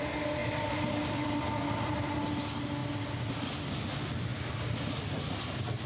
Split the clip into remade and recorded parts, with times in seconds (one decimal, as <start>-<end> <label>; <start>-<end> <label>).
0.0-0.4 recorded; 0.4-2.1 remade; 2.1-5.9 recorded